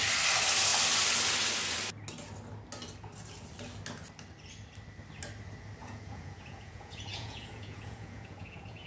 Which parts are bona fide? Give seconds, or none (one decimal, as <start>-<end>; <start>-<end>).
0.0-5.8